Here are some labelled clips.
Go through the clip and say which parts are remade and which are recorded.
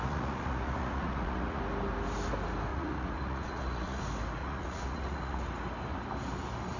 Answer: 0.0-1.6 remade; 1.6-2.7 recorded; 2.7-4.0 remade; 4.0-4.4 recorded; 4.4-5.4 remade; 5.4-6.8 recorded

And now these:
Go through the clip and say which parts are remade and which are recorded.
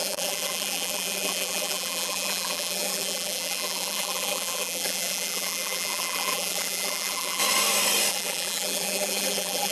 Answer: 0.0-7.4 remade; 7.4-8.1 recorded; 8.1-9.7 remade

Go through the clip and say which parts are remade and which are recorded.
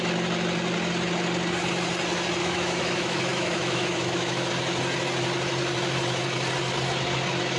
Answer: 0.0-2.4 recorded; 2.4-4.5 remade; 4.5-7.6 recorded